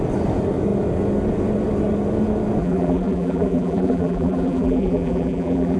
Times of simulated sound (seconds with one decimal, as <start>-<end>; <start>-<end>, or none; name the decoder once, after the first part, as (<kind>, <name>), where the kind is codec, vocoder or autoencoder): 2.6-5.8 (vocoder, BigVGAN v2)